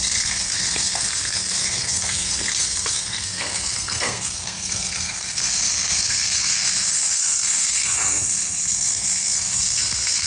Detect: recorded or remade remade